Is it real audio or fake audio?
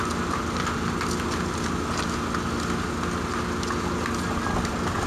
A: real